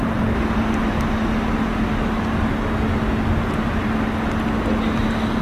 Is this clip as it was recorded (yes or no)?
yes